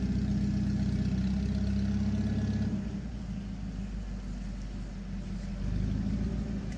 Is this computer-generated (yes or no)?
no